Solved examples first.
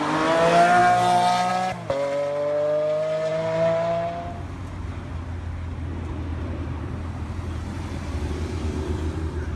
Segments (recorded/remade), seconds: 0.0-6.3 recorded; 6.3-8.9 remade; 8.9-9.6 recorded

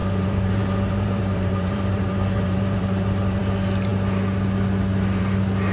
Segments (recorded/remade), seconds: 0.0-3.4 remade; 3.4-5.7 recorded

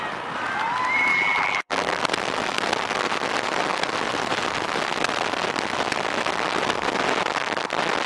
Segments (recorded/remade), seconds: 0.0-1.1 recorded; 1.1-2.0 remade; 2.0-8.1 recorded

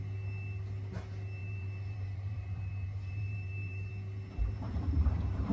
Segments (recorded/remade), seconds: 0.0-1.4 recorded; 1.4-3.9 remade; 3.9-4.4 recorded; 4.4-5.5 remade

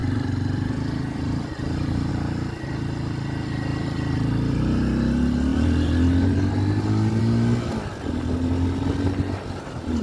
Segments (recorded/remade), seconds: 0.0-2.1 remade; 2.1-3.7 recorded; 3.7-4.6 remade; 4.6-5.5 recorded; 5.5-7.2 remade; 7.2-10.0 recorded

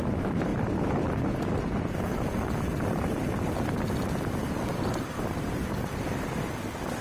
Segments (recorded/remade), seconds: 0.0-0.5 recorded; 0.5-1.1 remade; 1.1-7.0 recorded

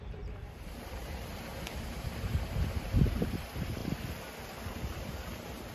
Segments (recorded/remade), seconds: 0.0-3.8 remade; 3.8-4.7 recorded; 4.7-5.7 remade

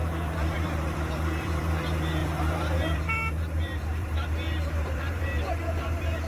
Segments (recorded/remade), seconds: 0.0-6.3 remade